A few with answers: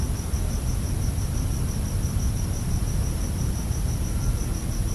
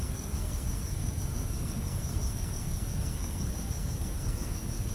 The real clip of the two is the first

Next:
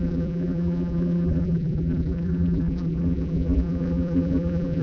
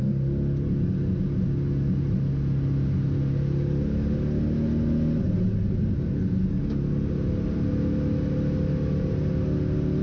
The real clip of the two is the second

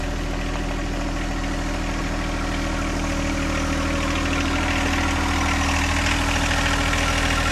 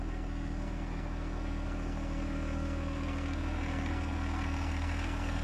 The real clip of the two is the first